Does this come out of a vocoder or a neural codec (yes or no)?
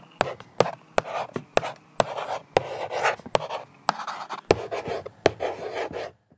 no